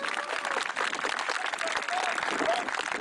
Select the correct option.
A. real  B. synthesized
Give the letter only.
A